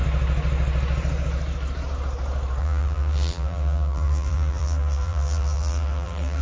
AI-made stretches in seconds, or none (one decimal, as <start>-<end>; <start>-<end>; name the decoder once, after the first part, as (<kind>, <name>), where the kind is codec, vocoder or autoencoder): 2.6-6.4 (vocoder, BigVGAN v2)